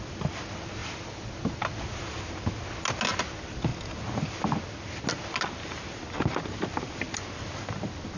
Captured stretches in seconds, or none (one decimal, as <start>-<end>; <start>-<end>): 0.0-0.8; 2.0-8.2